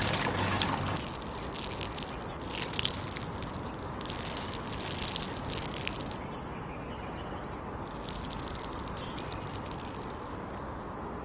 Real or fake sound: real